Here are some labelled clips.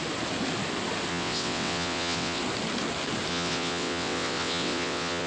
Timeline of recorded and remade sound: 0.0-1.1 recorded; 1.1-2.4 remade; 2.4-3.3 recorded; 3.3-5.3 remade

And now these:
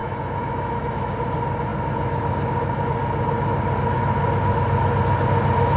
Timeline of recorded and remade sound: 0.0-1.1 remade; 1.1-5.8 recorded

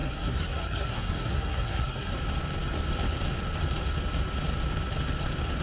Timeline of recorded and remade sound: 0.0-2.1 remade; 2.1-5.6 recorded

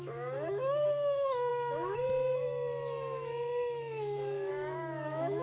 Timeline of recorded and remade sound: 0.0-5.4 remade

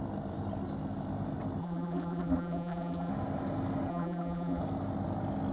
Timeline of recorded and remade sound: 0.0-1.6 recorded; 1.6-3.1 remade; 3.1-3.9 recorded; 3.9-4.6 remade; 4.6-5.5 recorded

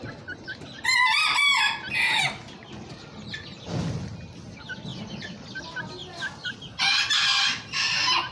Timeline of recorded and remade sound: 0.0-4.9 recorded; 4.9-5.6 remade; 5.6-6.0 recorded; 6.0-7.1 remade; 7.1-8.3 recorded

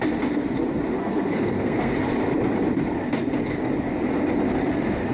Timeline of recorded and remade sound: 0.0-1.0 recorded; 1.0-1.9 remade; 1.9-5.1 recorded

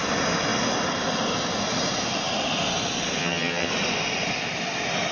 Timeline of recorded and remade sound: 0.0-3.2 recorded; 3.2-3.7 remade; 3.7-5.1 recorded